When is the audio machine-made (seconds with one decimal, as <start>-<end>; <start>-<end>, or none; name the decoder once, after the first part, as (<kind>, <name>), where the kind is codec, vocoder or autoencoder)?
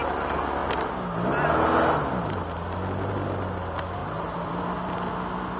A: 4.0-4.5 (vocoder, BigVGAN v2)